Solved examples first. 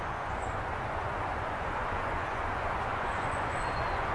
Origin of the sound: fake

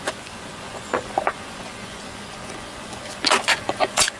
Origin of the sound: fake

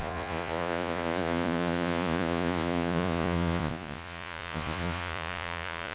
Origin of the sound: fake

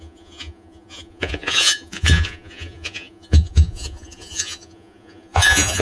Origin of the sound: fake